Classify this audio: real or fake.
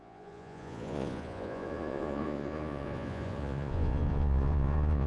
fake